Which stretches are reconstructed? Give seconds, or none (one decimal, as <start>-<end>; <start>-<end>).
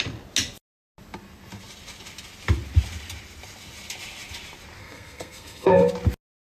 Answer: 4.8-5.9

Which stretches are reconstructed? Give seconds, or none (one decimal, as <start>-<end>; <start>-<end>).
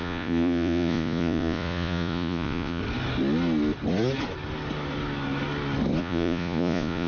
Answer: 0.0-2.8; 6.0-7.1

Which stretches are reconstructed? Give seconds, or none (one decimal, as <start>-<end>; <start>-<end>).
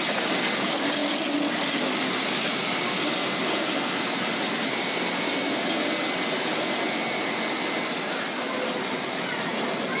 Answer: none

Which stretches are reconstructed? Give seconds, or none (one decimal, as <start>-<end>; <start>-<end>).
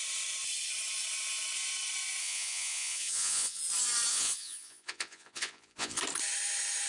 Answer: 2.2-3.6; 4.1-6.0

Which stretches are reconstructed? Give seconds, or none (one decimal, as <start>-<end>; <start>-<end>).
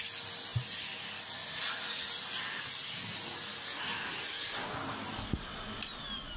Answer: none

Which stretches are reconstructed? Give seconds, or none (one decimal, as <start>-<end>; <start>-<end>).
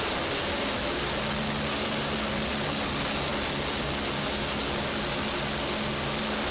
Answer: 2.3-2.9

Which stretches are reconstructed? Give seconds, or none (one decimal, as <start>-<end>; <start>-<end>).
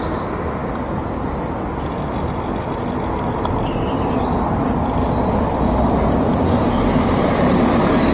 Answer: none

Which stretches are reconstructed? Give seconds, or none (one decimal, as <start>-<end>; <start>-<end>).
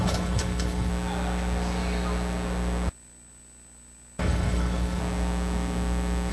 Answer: 0.0-0.9; 4.2-5.0